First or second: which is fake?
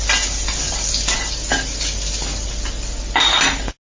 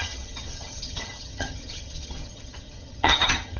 second